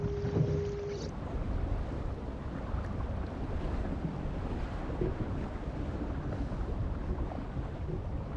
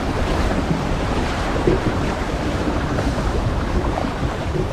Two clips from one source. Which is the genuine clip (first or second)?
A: first